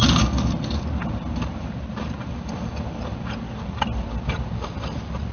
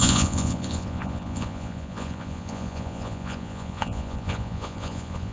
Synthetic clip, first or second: second